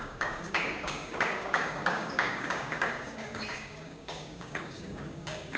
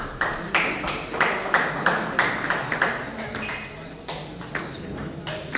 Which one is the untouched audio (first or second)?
second